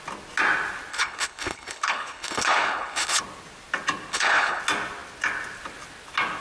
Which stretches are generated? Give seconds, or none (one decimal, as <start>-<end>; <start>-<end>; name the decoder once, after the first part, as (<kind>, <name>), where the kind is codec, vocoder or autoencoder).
0.9-3.2 (codec, HILCodec); 4.1-4.6

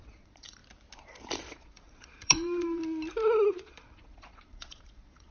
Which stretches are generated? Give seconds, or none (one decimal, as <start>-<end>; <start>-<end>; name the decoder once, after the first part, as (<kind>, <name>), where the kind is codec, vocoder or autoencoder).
0.0-0.6 (vocoder, Vocos); 1.5-2.8; 3.5-5.3

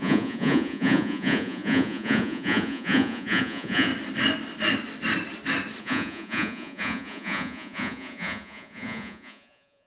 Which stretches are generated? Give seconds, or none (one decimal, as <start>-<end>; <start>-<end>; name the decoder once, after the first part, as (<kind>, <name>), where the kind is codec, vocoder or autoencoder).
0.0-3.9 (vocoder, Vocos); 5.8-9.9

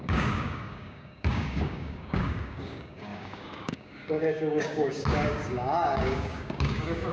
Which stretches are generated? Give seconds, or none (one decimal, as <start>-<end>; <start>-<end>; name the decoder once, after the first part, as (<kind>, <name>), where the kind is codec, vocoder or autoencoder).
0.0-7.1 (codec, DAC)

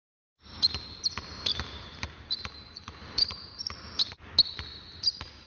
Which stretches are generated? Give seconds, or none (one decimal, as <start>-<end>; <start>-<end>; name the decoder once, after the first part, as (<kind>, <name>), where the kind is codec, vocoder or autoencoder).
1.5-3.6 (vocoder, BigVGAN v2); 4.7-5.5

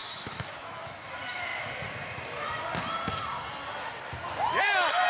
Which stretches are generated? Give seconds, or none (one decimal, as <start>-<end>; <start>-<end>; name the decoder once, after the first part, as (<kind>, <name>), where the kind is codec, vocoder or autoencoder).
0.0-0.9 (autoencoder, DAC-VAE)

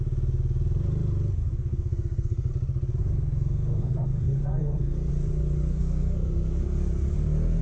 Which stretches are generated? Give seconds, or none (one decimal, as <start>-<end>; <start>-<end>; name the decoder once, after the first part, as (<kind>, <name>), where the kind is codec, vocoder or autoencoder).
1.4-2.5 (codec, SNAC); 3.0-5.1; 5.7-6.6

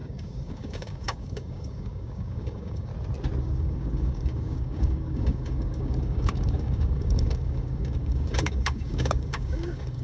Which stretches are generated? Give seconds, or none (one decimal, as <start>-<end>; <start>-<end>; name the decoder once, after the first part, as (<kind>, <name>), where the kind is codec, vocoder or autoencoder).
0.0-2.9 (codec, DAC); 3.4-10.0